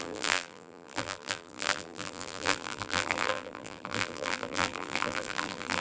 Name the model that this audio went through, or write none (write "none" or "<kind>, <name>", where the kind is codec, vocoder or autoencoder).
vocoder, BigVGAN v2